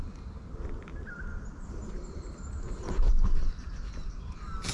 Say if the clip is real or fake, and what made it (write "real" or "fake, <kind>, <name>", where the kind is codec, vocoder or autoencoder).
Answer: real